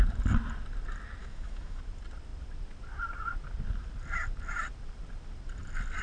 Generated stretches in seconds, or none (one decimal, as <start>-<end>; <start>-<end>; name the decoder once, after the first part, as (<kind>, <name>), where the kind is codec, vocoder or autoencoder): 1.2-1.8 (autoencoder, DAC-VAE)